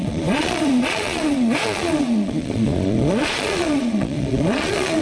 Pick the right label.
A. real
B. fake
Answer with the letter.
B